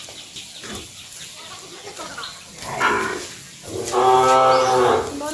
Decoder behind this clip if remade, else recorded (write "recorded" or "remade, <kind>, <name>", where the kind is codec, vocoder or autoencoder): recorded